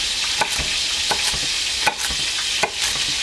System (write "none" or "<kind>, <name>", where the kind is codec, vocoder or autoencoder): none